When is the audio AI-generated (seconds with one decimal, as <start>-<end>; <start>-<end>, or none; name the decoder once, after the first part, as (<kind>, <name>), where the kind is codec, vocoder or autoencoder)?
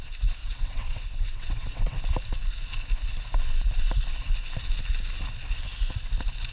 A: 0.4-2.0 (vocoder, WaveNeXt)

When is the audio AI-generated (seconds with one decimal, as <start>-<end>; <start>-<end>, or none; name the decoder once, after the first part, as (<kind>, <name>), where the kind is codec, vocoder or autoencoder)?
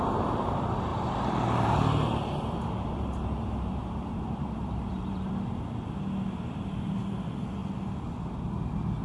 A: 0.9-5.3 (vocoder, BigVGAN v2)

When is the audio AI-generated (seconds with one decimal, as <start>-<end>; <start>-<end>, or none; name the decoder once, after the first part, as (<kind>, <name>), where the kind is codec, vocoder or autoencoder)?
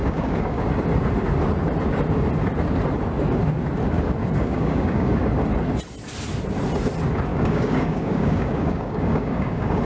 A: 0.0-0.6 (codec, DAC); 4.2-5.1; 7.3-9.8